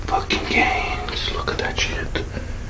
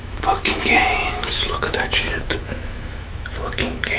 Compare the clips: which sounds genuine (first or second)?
first